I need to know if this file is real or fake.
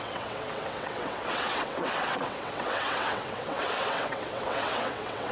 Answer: fake